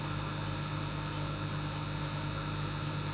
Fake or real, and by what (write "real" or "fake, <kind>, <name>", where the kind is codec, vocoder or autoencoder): real